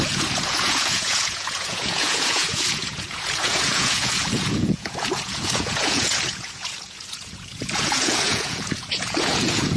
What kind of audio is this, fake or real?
fake